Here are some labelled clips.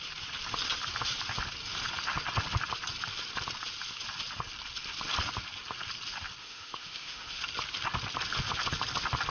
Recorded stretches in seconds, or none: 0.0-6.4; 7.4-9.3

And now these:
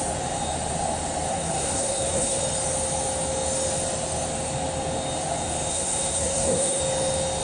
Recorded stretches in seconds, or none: 0.0-1.3; 2.4-5.7; 6.8-7.4

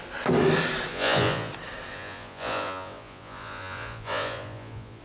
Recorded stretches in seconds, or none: 0.0-0.9; 1.5-1.9

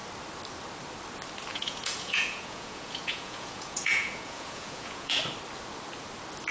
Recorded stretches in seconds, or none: 0.0-1.5; 5.2-6.5

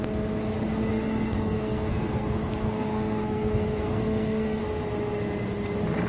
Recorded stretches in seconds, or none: 0.0-0.9; 4.6-6.1

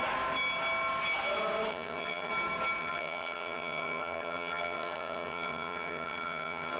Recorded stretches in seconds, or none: 0.0-1.7; 2.3-2.8